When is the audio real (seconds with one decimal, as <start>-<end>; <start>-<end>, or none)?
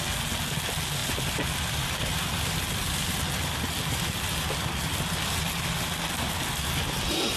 0.0-1.0; 5.4-7.4